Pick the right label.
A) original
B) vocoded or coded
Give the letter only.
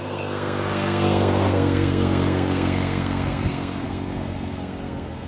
B